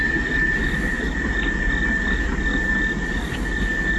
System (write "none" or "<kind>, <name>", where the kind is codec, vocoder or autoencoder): none